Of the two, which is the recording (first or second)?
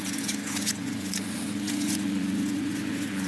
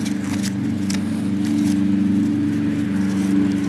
second